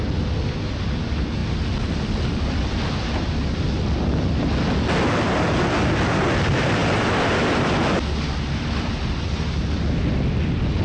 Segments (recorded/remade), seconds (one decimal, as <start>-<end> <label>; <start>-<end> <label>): 0.0-10.8 recorded